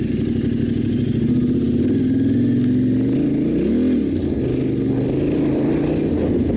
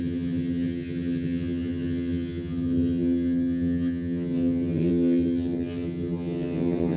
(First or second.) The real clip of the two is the first